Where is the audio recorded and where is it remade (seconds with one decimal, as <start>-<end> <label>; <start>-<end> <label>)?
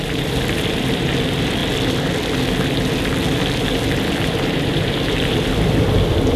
0.0-1.6 remade; 1.6-3.8 recorded; 3.8-6.4 remade